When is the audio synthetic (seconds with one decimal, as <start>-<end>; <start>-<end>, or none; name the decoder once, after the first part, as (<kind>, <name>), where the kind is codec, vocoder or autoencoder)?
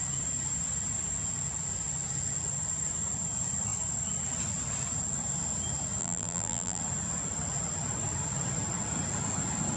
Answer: 6.0-6.8 (vocoder, BigVGAN v2)